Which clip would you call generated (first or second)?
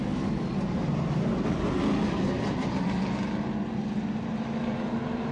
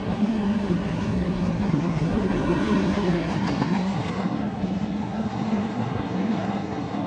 second